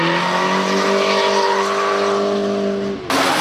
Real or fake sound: real